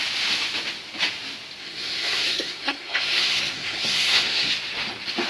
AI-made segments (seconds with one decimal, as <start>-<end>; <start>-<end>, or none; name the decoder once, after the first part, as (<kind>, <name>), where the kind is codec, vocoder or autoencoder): 1.6-4.5 (codec, SNAC)